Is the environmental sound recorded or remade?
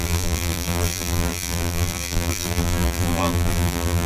remade